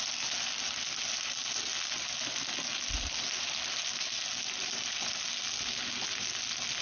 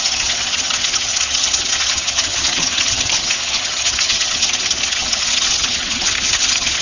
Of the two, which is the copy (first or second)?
second